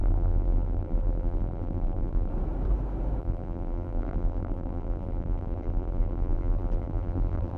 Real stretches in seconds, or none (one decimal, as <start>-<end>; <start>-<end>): 2.3-3.2